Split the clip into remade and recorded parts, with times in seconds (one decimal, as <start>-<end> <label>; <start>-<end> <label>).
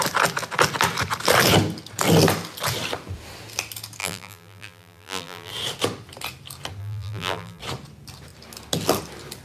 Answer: 0.0-4.0 recorded; 4.0-5.5 remade; 5.5-6.8 recorded; 6.8-7.6 remade; 7.6-9.4 recorded